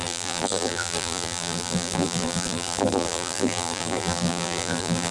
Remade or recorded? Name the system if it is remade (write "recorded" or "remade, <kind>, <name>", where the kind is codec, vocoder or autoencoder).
remade, vocoder, BigVGAN v2